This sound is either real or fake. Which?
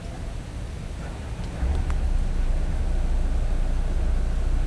real